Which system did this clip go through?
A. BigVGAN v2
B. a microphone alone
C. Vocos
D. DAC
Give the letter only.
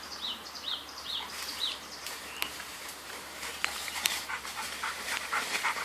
A